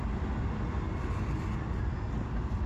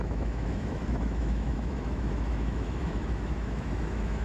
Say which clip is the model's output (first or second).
second